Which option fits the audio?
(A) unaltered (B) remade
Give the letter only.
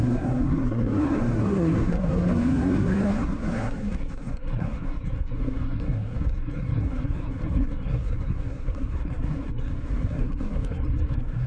B